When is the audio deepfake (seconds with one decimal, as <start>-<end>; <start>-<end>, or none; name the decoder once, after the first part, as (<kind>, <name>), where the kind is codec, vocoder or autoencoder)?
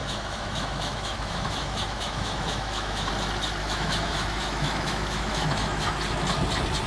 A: 0.0-3.1 (autoencoder, DAC-VAE); 3.6-6.0